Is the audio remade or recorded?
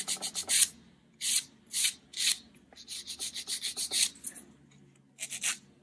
recorded